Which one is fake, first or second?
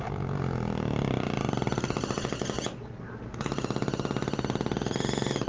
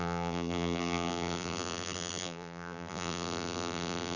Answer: second